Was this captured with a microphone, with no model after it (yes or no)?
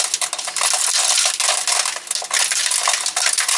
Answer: yes